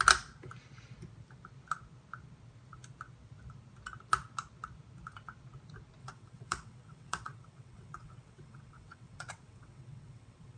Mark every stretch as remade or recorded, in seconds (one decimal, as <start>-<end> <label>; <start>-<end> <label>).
0.0-6.0 recorded; 6.0-10.6 remade